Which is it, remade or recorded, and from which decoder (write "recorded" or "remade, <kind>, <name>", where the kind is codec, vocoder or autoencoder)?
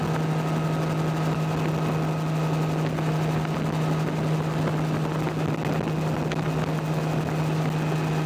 recorded